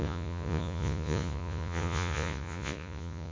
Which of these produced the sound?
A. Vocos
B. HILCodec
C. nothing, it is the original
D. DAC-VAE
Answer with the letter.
A